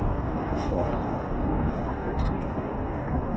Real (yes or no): no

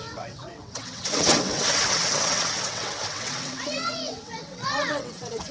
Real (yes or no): no